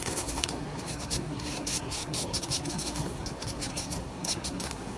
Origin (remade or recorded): remade